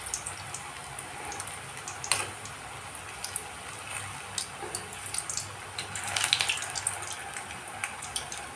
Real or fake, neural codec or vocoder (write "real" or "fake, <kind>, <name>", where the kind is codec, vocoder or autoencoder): real